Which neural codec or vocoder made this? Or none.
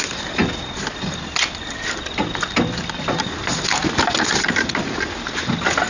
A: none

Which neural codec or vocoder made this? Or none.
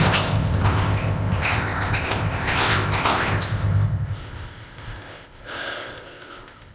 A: codec, ZipCodec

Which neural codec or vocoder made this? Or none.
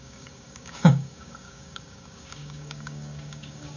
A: codec, DAC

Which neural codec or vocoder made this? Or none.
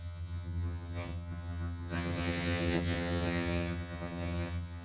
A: vocoder, HiFi-GAN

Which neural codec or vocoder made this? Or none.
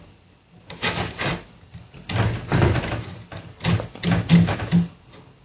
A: none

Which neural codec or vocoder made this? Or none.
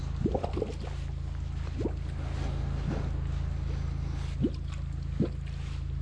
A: none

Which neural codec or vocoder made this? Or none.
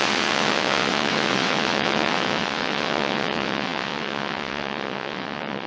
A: vocoder, WaveNeXt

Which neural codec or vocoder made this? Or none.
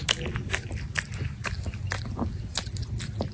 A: none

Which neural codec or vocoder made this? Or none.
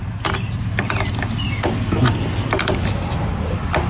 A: none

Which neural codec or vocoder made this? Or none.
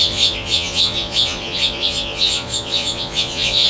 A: vocoder, Vocos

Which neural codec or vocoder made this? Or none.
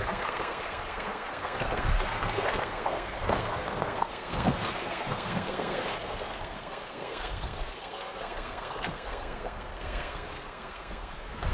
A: codec, SNAC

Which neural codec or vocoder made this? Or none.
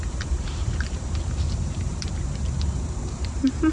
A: vocoder, BigVGAN v2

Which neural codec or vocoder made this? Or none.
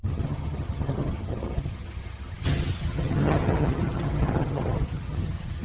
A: vocoder, HiFi-GAN